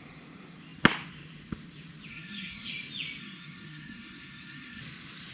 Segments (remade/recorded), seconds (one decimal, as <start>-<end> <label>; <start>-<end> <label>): 0.0-2.1 recorded; 2.1-2.7 remade; 2.7-3.2 recorded; 3.2-4.8 remade; 4.8-5.3 recorded